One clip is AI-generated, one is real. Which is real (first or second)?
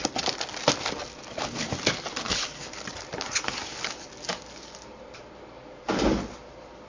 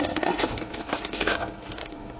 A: first